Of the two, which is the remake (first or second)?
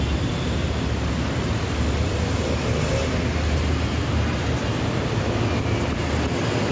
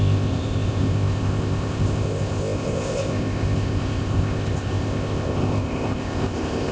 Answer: second